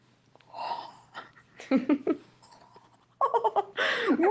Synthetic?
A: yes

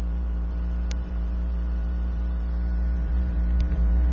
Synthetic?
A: yes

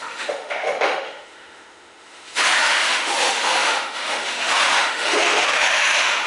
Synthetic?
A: yes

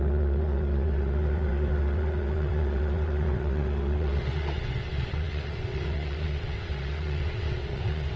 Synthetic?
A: yes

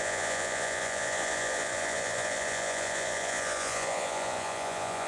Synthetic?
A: yes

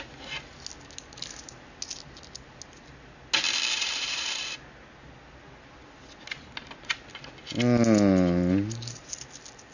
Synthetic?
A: no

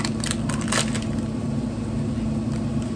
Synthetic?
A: no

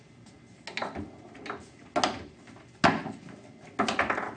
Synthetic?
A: no